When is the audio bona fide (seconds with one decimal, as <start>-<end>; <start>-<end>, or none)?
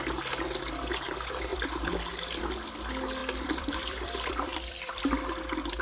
0.0-1.5; 2.4-3.2; 5.0-5.8